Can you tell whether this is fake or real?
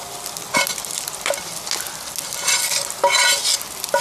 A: real